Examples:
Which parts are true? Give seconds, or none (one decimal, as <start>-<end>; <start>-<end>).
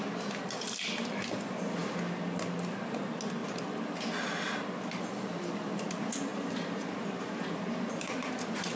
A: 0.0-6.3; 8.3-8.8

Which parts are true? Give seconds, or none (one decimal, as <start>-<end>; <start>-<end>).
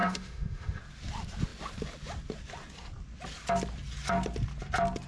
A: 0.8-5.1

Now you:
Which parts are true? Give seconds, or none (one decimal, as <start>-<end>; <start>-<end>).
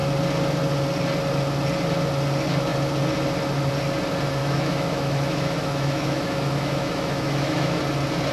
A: 0.0-4.4; 7.8-8.3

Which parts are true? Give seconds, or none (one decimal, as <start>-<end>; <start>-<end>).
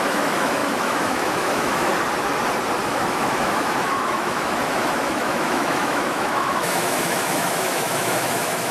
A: 1.9-2.8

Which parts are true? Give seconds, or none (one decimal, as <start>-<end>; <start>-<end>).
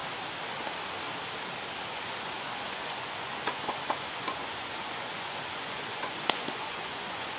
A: 0.0-1.9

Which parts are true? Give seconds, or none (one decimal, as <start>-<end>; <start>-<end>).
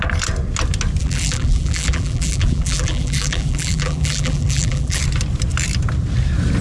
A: 0.0-1.0; 5.0-6.6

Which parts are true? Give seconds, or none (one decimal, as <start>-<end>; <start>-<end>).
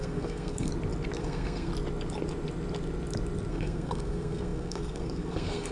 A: 0.7-1.2; 1.7-3.5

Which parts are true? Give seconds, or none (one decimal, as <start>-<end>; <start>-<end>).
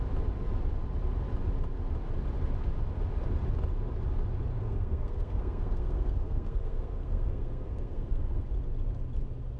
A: 0.0-4.5; 8.5-9.6